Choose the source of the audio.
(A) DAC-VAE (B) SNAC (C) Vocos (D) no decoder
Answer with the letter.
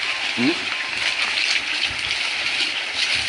D